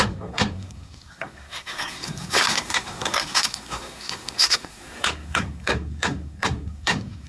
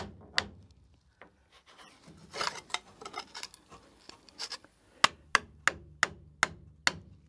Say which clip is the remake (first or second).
first